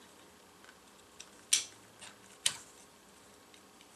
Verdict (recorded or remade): recorded